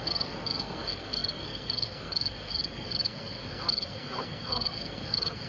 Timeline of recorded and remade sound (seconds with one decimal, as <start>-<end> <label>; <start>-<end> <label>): 0.0-5.5 remade